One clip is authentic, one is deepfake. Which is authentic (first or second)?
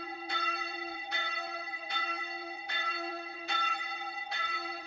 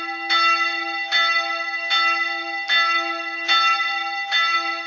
second